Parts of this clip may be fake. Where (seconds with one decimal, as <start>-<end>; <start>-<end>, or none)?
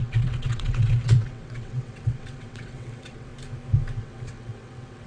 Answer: 0.0-3.3; 4.0-5.1